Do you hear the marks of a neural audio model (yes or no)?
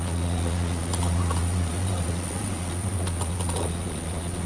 yes